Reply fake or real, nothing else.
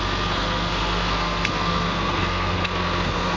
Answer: fake